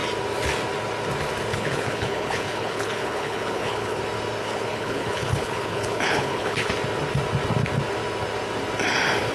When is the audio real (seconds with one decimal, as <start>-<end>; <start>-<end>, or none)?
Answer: 0.0-1.5; 4.0-4.4; 6.7-9.3